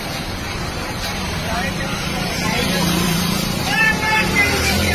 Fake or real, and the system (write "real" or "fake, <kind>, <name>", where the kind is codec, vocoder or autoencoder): fake, vocoder, BigVGAN v2